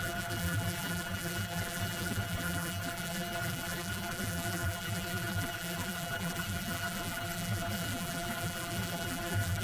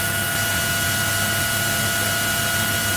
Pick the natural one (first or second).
second